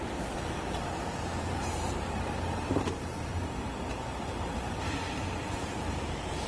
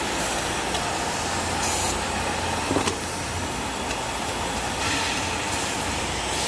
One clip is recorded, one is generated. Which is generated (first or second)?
first